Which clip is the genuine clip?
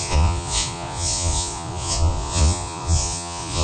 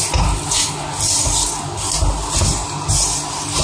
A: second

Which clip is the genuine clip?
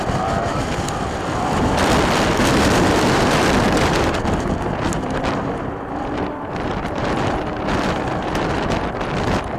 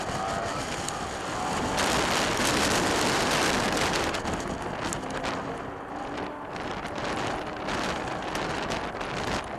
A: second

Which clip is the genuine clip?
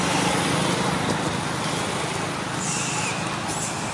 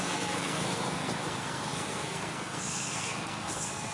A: first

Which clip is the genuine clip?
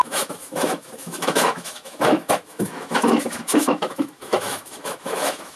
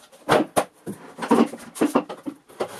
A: second